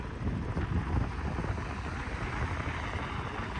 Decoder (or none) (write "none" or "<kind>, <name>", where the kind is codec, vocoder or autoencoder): none